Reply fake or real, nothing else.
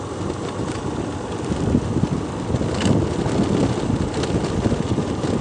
real